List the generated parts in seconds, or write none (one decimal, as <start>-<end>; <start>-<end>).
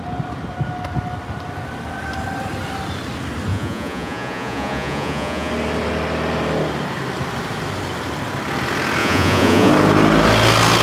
3.5-5.5; 9.0-9.7